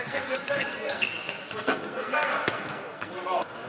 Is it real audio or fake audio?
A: fake